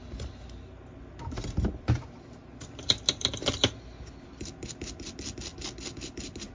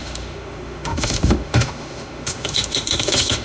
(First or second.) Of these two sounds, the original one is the first